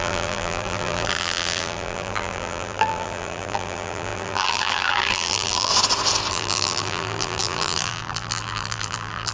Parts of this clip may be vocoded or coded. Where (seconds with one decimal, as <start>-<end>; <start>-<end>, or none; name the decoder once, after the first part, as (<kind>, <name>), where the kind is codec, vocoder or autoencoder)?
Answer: 0.0-5.7 (vocoder, BigVGAN v2); 6.3-9.3